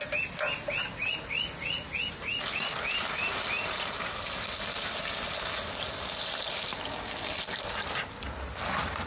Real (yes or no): yes